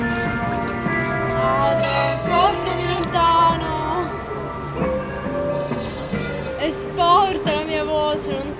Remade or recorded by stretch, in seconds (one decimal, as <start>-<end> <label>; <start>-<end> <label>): 0.0-1.8 recorded; 1.8-3.0 remade; 3.0-5.5 recorded; 5.5-6.5 remade; 6.5-8.6 recorded